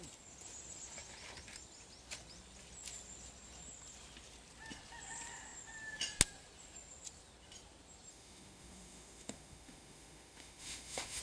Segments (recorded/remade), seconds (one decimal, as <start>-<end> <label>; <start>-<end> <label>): 0.0-8.1 recorded; 8.1-11.2 remade